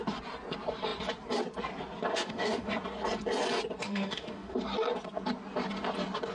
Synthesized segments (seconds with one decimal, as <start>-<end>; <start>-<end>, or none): 2.1-2.7; 3.8-4.6